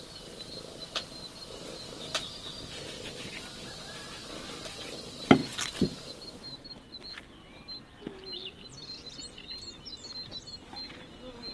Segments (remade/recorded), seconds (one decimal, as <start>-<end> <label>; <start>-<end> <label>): 0.0-11.5 recorded